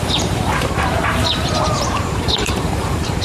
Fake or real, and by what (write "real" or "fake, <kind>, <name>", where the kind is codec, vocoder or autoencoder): fake, vocoder, BigVGAN v2